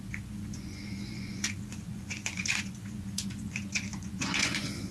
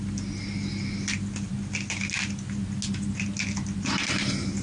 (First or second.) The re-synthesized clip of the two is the first